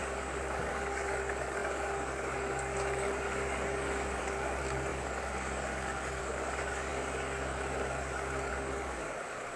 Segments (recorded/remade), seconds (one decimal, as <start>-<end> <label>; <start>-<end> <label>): 0.0-9.6 remade